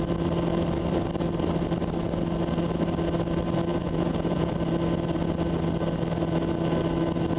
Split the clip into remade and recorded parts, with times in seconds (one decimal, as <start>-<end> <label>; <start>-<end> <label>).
0.0-3.7 recorded; 3.7-4.5 remade; 4.5-7.4 recorded